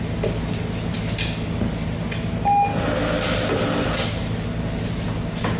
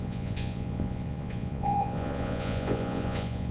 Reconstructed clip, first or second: second